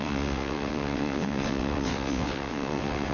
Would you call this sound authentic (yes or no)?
no